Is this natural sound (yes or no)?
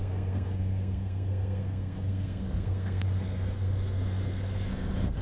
no